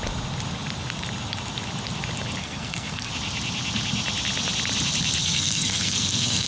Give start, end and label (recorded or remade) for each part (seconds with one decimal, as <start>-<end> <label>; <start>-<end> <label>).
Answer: 0.0-2.4 recorded; 2.4-3.1 remade; 3.1-5.2 recorded; 5.2-6.5 remade